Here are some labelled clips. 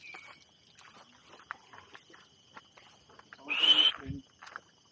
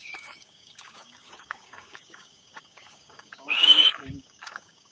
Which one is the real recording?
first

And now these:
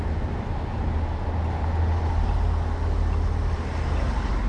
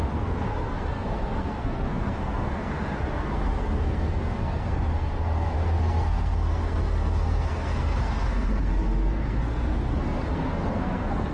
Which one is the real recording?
first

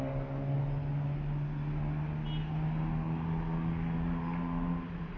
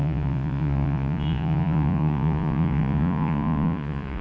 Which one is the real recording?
first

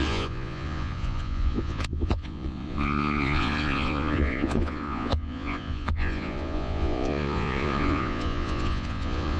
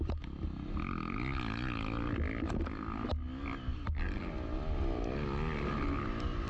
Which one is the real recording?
second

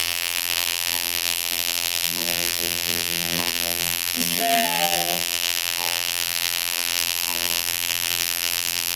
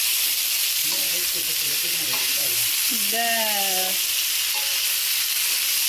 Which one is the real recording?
second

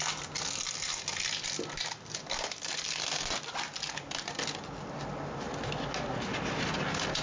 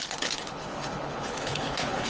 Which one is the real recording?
first